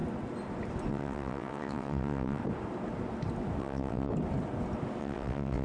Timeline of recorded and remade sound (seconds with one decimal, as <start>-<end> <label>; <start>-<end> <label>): 0.0-0.9 recorded; 0.9-2.4 remade; 2.4-3.6 recorded; 3.6-4.1 remade; 4.1-5.0 recorded; 5.0-5.6 remade